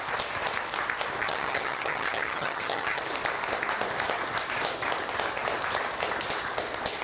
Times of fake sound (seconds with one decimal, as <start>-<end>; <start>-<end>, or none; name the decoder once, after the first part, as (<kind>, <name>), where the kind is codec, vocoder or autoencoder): 1.2-3.0 (vocoder, HiFi-GAN)